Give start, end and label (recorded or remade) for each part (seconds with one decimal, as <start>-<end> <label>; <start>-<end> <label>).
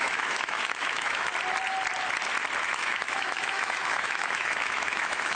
0.0-1.3 remade; 1.3-2.6 recorded; 2.6-5.3 remade